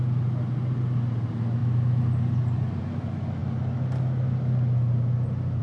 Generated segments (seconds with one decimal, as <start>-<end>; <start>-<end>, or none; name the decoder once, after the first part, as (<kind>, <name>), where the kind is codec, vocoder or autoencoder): none